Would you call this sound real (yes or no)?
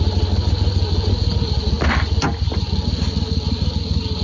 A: yes